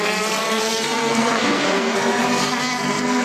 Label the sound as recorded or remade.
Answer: remade